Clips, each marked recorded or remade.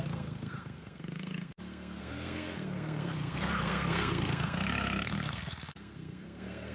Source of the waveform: remade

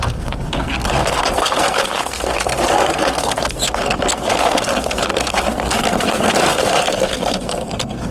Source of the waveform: remade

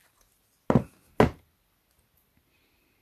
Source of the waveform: recorded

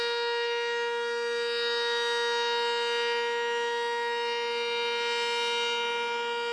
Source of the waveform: recorded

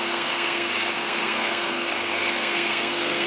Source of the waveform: remade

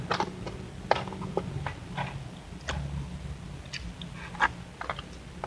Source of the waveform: recorded